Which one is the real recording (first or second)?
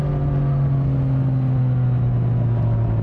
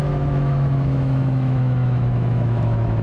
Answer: first